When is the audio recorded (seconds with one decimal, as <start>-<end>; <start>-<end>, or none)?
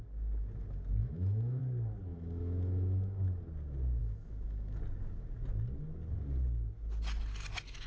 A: 0.0-1.0; 1.6-2.1; 3.4-4.0; 4.8-7.9